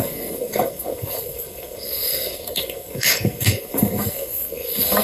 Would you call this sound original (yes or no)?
no